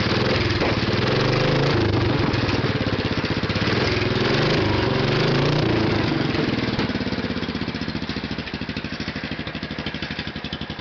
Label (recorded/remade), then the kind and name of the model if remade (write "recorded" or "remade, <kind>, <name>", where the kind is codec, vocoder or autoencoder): recorded